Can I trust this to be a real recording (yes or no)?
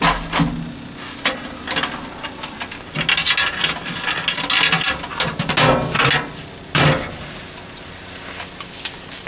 yes